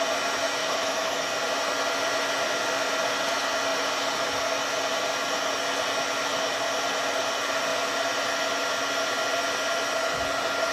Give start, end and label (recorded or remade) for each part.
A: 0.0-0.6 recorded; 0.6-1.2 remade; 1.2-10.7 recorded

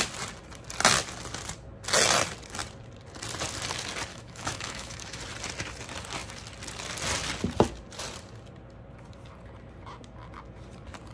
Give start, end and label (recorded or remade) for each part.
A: 0.0-4.1 recorded; 4.1-5.2 remade; 5.2-11.1 recorded